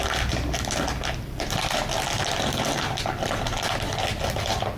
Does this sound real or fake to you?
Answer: real